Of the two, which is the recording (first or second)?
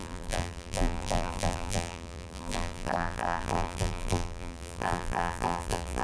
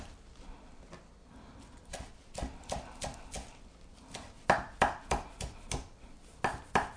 second